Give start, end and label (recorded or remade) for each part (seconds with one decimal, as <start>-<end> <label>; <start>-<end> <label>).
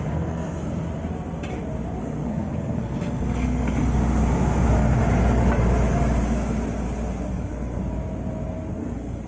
0.0-0.6 remade; 0.6-2.0 recorded; 2.0-3.8 remade; 3.8-7.3 recorded; 7.3-7.8 remade; 7.8-8.7 recorded; 8.7-9.3 remade